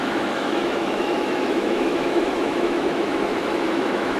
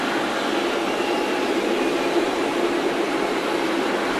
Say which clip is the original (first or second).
second